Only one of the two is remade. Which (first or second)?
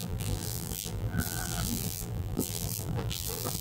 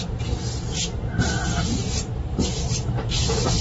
first